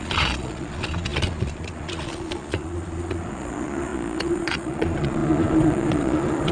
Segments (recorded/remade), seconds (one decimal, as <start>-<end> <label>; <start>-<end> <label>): 0.0-6.5 remade

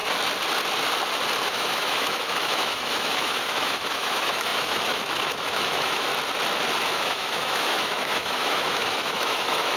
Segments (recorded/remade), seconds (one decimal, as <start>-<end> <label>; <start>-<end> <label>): 0.0-1.5 recorded; 1.5-6.1 remade; 6.1-6.9 recorded; 6.9-9.8 remade